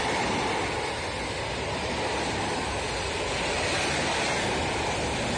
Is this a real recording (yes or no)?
yes